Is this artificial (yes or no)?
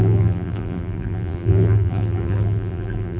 yes